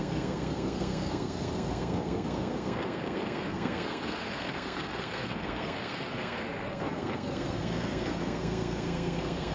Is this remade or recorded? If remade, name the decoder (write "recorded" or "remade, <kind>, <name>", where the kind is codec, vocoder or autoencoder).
remade, codec, SNAC